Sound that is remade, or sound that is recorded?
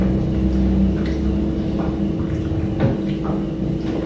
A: recorded